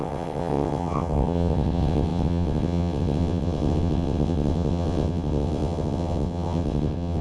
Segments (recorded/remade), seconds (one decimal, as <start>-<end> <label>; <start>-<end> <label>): 0.0-7.2 remade